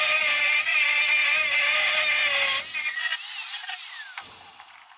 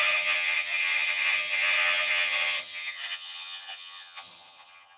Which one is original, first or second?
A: first